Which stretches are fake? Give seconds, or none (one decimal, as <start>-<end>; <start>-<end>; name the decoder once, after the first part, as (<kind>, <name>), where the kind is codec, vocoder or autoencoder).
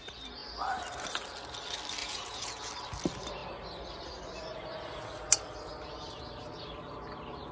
2.0-2.7 (vocoder, Vocos)